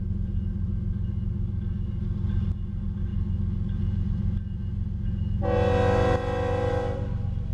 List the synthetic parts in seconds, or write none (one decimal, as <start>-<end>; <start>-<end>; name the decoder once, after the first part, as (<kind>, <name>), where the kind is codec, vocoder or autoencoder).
none